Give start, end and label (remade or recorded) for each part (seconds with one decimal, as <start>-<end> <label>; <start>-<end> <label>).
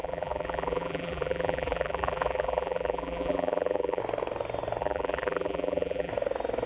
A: 0.0-4.0 remade; 4.0-4.8 recorded; 4.8-6.1 remade; 6.1-6.7 recorded